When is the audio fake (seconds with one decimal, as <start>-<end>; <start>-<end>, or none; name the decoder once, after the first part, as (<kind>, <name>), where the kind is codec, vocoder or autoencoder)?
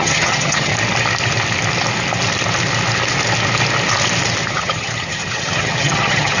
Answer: 0.0-0.7 (vocoder, HiFi-GAN); 4.5-6.4